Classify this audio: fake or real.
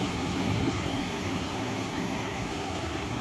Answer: fake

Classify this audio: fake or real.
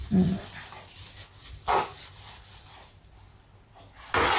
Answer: real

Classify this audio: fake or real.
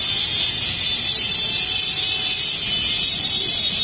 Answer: real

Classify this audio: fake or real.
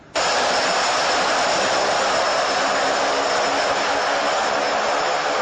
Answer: real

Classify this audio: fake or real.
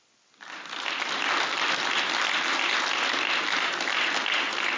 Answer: real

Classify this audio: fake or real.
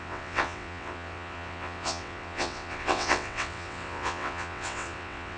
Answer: fake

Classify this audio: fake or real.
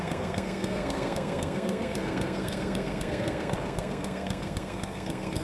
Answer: fake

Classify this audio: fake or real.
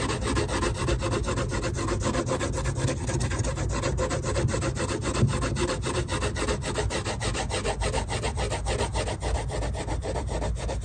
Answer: real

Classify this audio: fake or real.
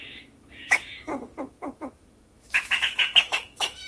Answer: fake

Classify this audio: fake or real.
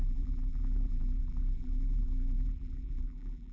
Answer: fake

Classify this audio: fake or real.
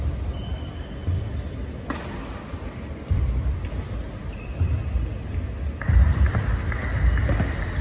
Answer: real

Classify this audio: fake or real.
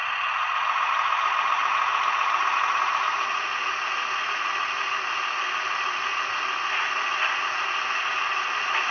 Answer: real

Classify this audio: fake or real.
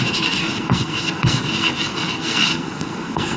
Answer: fake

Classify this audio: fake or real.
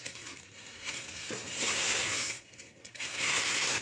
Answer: fake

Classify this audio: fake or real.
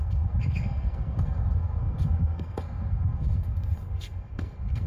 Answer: fake